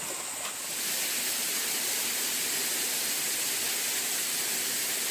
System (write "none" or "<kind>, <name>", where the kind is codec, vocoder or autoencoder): none